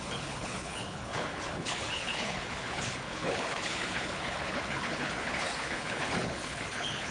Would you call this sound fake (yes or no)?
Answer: yes